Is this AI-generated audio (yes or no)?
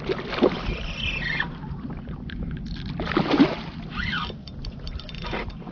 no